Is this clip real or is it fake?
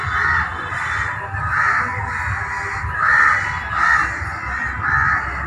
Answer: real